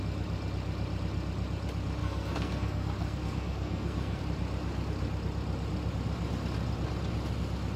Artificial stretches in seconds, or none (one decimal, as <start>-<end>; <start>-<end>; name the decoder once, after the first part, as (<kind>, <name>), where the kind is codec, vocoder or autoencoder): 2.0-4.2 (codec, SNAC)